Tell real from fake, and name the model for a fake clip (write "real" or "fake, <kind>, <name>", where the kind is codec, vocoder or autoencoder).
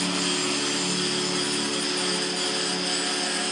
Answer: real